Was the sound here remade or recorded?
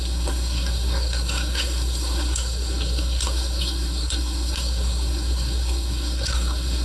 remade